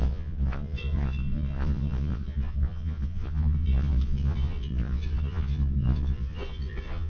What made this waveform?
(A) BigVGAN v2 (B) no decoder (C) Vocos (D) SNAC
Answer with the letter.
C